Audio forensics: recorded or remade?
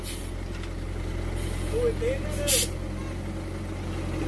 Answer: recorded